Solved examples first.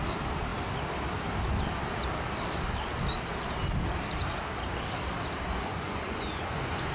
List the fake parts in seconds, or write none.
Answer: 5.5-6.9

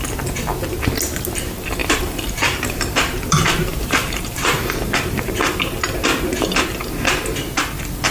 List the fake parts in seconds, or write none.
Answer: 1.8-5.3

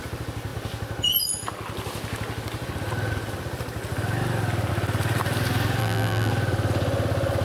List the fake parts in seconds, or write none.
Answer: 5.8-6.3

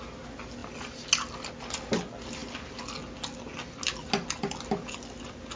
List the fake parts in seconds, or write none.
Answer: none

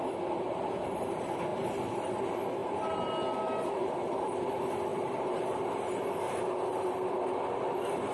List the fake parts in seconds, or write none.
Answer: 2.6-3.1; 4.9-5.7; 6.7-7.3

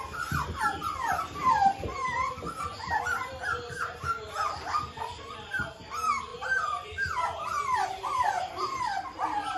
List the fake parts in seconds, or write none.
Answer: 3.5-5.7; 6.3-8.8